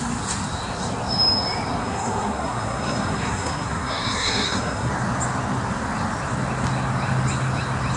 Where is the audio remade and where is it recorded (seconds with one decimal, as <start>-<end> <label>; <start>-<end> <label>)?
0.0-1.8 recorded; 1.8-4.9 remade; 4.9-8.0 recorded